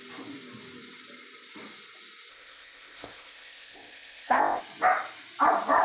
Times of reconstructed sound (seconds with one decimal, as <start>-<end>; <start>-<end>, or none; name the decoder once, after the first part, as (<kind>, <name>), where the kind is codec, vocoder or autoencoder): 2.3-4.6 (codec, ZipCodec)